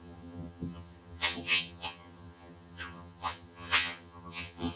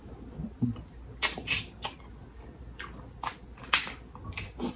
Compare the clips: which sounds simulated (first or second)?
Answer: first